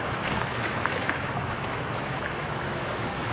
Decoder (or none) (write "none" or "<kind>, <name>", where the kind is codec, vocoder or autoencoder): autoencoder, DAC-VAE